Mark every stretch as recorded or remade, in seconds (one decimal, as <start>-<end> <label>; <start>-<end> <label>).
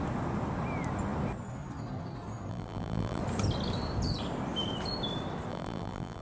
0.0-2.5 recorded; 2.5-3.2 remade; 3.2-5.5 recorded; 5.5-6.2 remade